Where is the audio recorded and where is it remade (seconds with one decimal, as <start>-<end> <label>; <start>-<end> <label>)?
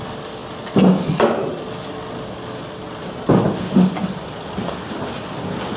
0.0-5.8 recorded